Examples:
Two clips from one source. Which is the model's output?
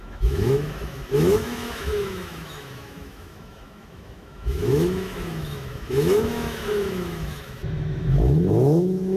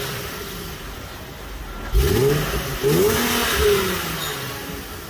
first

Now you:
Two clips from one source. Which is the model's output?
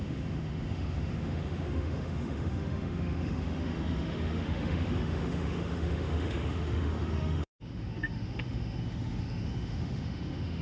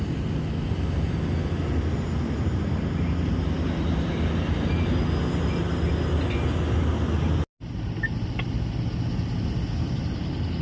first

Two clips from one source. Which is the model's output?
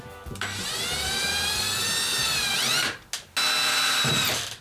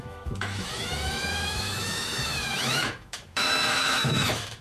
second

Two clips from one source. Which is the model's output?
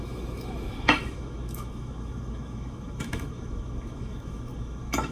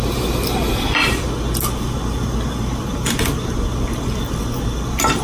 first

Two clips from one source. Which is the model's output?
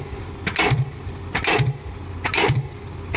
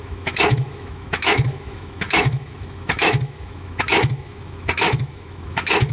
second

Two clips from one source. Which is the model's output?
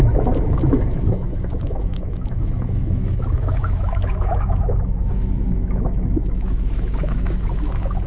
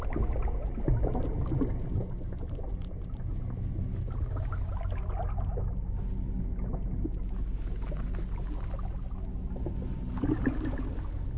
first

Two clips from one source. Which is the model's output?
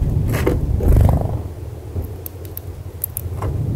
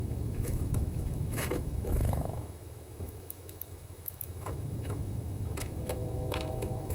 second